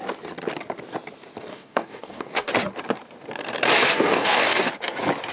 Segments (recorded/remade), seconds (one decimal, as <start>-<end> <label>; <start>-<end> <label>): 0.0-1.5 recorded; 1.5-2.5 remade; 2.5-3.9 recorded; 3.9-4.7 remade; 4.7-5.3 recorded